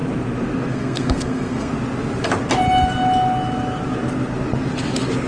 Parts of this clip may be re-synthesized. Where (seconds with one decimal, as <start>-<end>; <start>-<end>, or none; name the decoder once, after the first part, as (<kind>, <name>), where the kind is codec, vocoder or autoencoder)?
0.7-1.7 (codec, SNAC)